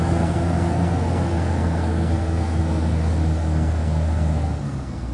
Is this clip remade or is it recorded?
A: remade